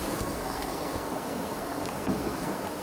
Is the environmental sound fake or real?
fake